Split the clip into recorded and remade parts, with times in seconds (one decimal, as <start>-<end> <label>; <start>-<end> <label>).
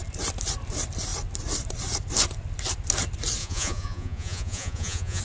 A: 0.0-3.4 recorded; 3.4-5.2 remade